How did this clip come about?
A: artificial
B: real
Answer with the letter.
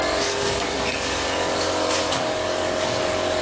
A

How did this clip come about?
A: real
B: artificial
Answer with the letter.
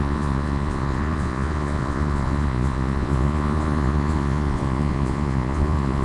B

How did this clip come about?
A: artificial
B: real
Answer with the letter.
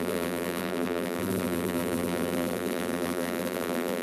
A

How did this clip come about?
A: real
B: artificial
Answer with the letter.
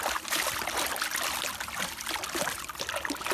A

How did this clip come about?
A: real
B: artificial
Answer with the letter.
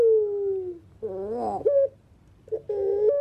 A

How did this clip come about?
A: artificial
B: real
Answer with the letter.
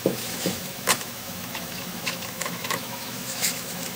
A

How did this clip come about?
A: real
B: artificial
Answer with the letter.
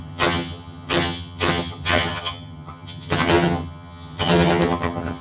B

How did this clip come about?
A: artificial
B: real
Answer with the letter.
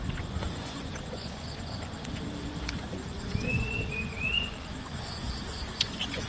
A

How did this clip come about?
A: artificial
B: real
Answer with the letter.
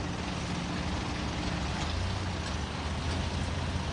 B